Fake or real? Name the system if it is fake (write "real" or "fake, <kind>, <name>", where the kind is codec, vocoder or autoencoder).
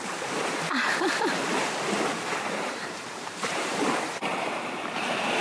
fake, vocoder, BigVGAN v2